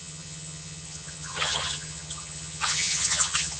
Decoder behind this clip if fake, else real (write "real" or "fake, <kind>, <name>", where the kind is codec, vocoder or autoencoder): fake, vocoder, HiFi-GAN